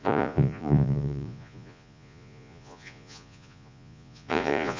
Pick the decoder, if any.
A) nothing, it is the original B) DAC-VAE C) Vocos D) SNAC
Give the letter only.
C